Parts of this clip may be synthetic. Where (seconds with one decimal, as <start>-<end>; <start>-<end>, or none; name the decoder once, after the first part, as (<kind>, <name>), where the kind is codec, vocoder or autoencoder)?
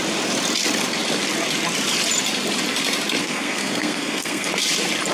3.2-4.5 (codec, SNAC)